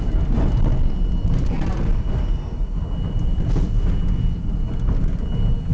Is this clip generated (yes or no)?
no